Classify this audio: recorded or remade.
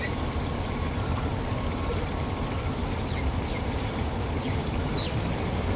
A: remade